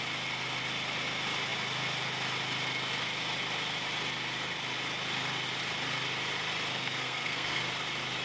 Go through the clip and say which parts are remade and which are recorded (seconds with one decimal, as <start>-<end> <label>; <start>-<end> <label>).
0.0-6.7 recorded; 6.7-7.6 remade; 7.6-8.2 recorded